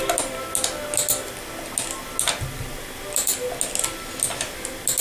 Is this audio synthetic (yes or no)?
no